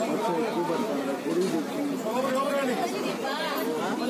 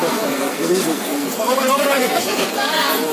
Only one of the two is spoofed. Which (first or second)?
second